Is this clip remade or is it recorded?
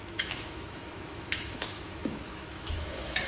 remade